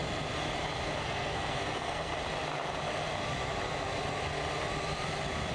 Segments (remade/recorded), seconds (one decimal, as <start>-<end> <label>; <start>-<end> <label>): 0.0-1.0 recorded; 1.0-2.1 remade; 2.1-5.5 recorded